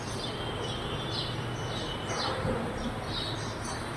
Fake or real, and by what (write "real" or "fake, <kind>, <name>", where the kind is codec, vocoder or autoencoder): real